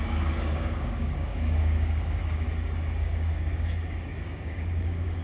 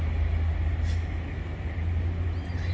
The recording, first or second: second